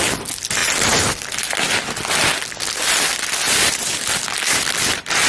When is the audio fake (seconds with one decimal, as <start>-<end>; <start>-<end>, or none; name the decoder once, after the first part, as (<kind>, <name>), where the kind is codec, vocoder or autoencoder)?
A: none